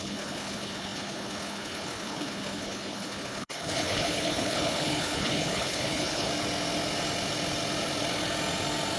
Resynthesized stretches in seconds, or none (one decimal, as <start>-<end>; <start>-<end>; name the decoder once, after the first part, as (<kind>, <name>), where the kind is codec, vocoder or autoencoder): 0.0-6.3 (codec, HILCodec)